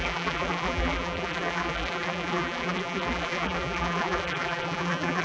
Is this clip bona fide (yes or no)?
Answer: no